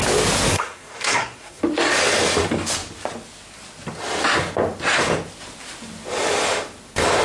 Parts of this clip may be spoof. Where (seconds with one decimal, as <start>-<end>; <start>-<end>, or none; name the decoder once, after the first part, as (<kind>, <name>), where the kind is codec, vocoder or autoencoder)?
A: 0.5-1.6 (codec, SNAC)